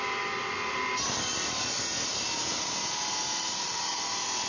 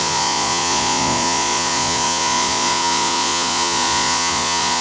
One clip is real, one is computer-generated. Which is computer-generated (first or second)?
second